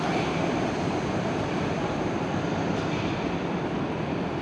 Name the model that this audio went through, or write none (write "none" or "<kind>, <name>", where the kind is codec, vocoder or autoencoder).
vocoder, BigVGAN v2